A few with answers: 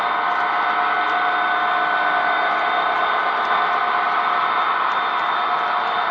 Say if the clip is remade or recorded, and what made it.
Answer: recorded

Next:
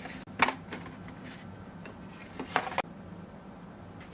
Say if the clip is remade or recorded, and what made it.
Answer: recorded